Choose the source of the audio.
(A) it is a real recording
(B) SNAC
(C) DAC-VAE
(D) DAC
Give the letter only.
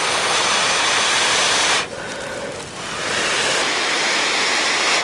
A